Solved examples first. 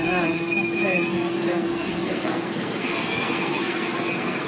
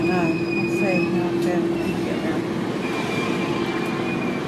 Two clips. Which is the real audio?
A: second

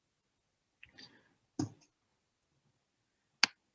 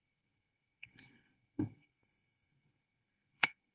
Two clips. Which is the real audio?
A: first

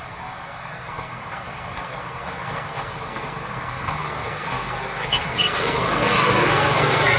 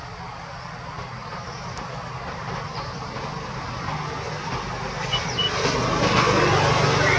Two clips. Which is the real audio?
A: second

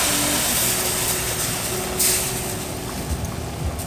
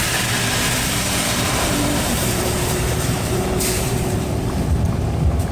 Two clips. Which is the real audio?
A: first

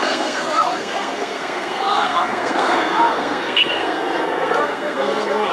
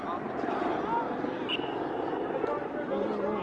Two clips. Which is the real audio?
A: second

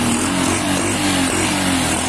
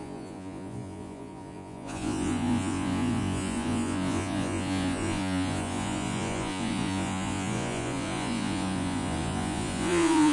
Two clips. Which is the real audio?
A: first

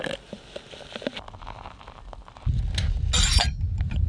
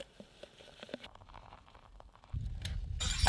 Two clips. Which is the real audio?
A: first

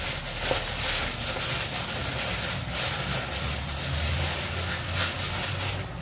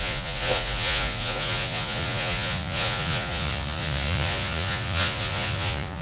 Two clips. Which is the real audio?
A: first